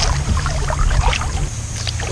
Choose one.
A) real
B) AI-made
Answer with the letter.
A